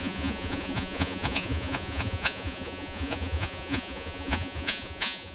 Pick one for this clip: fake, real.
fake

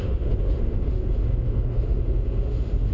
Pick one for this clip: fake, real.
fake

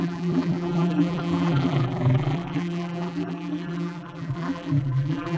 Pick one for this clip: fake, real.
fake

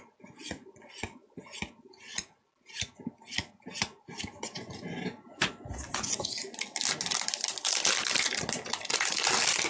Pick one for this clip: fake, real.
real